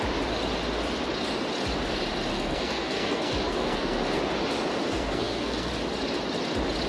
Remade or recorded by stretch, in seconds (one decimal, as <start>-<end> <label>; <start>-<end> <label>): 0.0-2.3 recorded; 2.3-4.2 remade; 4.2-4.9 recorded; 4.9-5.7 remade; 5.7-6.9 recorded